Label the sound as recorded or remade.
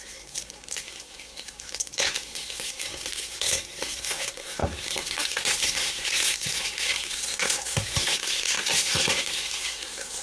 remade